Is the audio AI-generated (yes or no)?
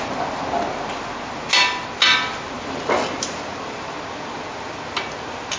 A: no